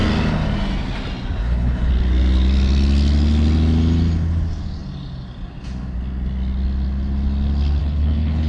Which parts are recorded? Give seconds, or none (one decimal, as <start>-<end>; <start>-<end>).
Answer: 0.0-1.4; 1.9-7.8